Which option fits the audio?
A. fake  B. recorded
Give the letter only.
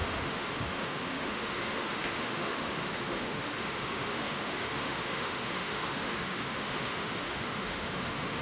A